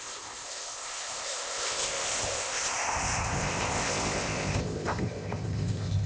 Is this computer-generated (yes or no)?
yes